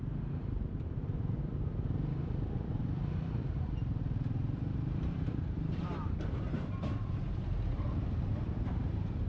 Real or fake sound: fake